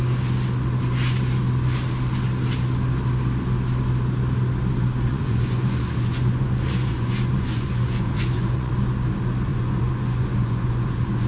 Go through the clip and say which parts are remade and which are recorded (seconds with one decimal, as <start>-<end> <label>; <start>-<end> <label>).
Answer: 0.0-5.1 recorded; 5.1-8.7 remade; 8.7-9.5 recorded; 9.5-11.3 remade